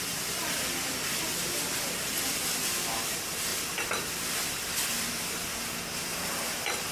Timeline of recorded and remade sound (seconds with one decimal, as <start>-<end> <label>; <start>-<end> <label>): 0.0-6.9 recorded